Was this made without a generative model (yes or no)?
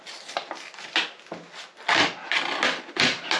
yes